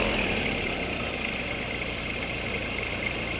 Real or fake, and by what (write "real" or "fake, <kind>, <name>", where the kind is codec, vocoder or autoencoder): real